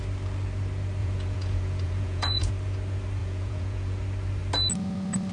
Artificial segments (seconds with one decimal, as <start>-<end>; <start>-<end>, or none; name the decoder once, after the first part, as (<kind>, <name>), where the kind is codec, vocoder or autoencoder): 1.0-2.5 (vocoder, Vocos); 3.2-4.0